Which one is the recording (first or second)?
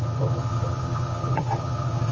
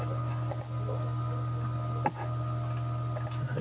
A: second